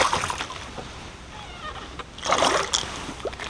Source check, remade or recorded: recorded